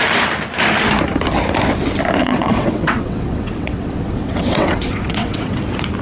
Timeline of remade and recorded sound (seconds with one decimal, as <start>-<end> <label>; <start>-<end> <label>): 0.0-2.2 recorded; 2.2-5.6 remade; 5.6-6.0 recorded